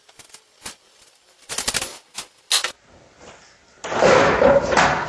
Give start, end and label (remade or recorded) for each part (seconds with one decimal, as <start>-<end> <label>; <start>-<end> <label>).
0.0-5.1 recorded